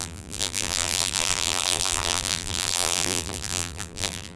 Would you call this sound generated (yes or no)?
yes